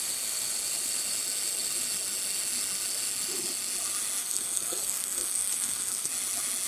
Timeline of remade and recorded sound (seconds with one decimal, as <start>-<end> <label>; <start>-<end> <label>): 0.0-4.2 recorded; 4.2-6.1 remade; 6.1-6.7 recorded